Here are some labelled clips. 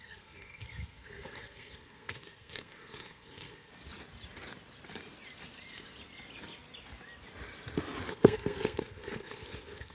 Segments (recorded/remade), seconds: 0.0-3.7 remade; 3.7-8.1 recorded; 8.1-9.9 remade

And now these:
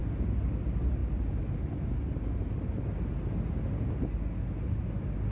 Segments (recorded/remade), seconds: 0.0-5.3 recorded